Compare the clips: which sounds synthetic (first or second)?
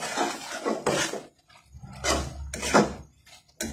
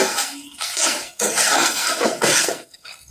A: second